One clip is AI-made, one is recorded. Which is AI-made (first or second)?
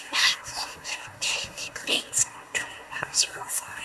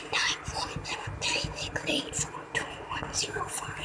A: first